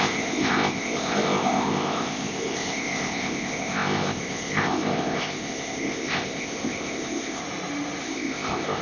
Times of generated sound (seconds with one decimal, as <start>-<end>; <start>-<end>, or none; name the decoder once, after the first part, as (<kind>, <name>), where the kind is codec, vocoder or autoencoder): 0.0-7.4 (codec, ZipCodec); 8.0-8.8

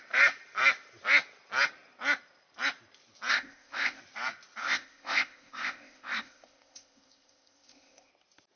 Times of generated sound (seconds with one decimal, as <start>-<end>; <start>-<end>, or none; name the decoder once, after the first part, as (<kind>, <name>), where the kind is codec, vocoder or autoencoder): 3.3-4.0 (codec, ZipCodec); 4.6-8.1

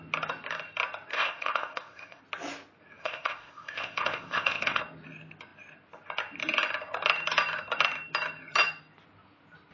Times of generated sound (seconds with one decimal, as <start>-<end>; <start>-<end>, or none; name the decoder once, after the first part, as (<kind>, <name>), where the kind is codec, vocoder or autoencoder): 1.1-2.2 (codec, ZipCodec); 3.0-4.8